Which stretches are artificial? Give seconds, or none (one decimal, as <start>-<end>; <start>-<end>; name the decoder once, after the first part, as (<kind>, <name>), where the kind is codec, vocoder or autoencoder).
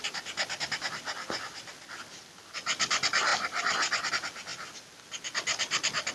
none